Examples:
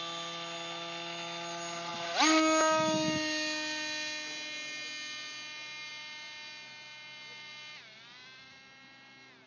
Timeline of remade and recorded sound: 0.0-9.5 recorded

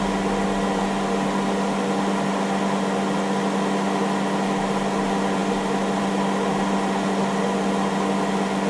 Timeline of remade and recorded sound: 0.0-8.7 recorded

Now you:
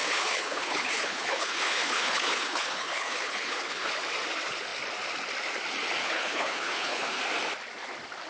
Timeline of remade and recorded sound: 0.0-3.9 remade; 3.9-6.0 recorded; 6.0-7.2 remade; 7.2-8.3 recorded

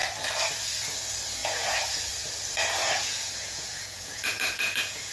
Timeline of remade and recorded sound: 0.0-1.4 recorded; 1.4-2.0 remade; 2.0-2.8 recorded; 2.8-5.1 remade

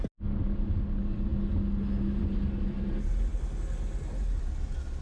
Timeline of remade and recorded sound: 0.0-5.0 recorded

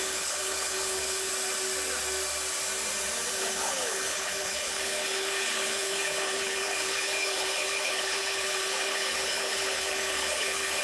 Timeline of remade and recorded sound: 0.0-1.3 remade; 1.3-3.3 recorded; 3.3-10.8 remade

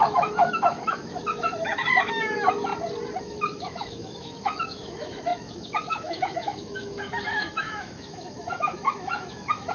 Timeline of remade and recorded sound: 0.0-2.7 remade; 2.7-3.2 recorded; 3.2-9.7 remade